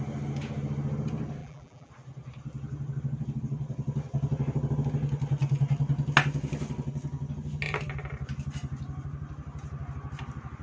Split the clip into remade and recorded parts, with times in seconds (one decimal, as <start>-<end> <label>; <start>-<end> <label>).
0.0-1.4 recorded; 1.4-1.9 remade; 1.9-10.6 recorded